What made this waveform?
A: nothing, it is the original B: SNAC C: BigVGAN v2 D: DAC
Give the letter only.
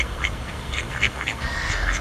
B